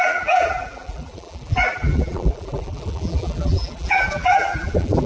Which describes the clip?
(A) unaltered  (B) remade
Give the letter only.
B